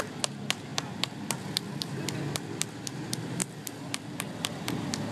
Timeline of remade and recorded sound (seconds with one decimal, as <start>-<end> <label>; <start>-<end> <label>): 0.0-5.1 recorded